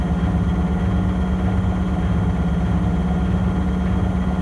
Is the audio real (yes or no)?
yes